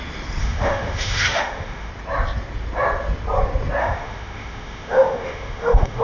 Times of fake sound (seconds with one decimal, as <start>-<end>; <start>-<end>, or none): 0.4-1.9; 3.8-6.0